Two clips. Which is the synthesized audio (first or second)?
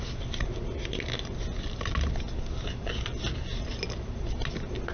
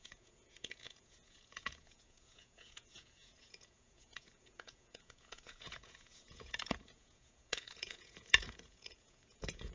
second